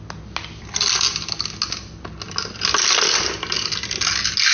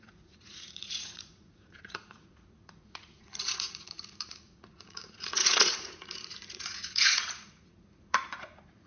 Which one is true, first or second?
first